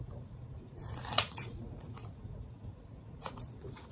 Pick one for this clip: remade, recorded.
remade